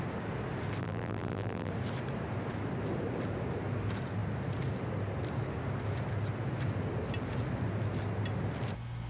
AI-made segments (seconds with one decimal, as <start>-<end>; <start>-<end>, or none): 0.8-1.7